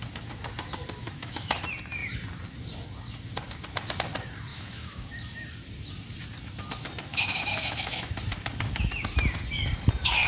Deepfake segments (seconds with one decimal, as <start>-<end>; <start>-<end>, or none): 1.0-1.6; 4.5-5.1; 7.1-8.1